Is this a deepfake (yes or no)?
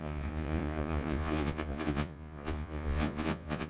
yes